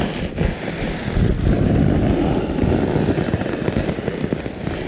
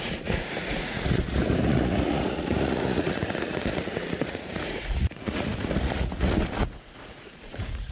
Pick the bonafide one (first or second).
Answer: first